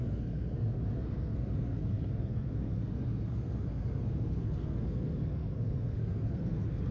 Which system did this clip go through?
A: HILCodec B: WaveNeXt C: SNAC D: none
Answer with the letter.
C